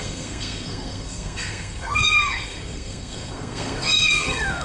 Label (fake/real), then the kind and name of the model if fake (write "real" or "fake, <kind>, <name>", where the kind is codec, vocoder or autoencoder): fake, codec, SNAC